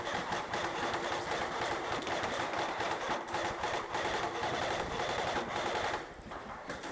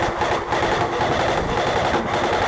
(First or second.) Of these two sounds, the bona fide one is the second